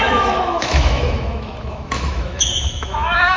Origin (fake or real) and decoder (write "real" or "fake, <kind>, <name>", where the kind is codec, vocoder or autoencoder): fake, autoencoder, DAC-VAE